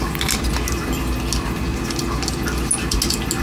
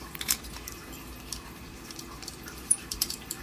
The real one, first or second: first